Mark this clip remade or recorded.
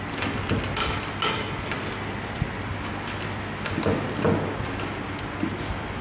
recorded